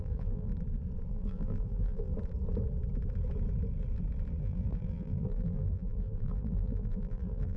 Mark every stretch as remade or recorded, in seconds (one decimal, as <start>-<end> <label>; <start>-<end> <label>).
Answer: 0.0-0.5 remade; 0.5-1.1 recorded; 1.1-2.1 remade; 2.1-4.4 recorded; 4.4-7.6 remade